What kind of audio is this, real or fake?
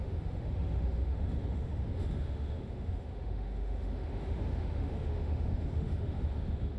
fake